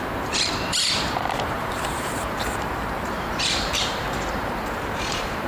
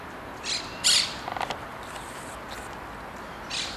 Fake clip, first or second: first